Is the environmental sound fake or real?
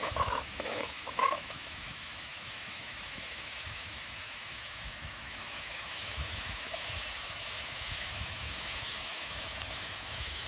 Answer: fake